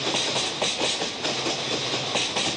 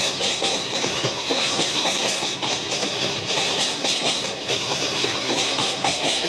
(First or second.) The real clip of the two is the first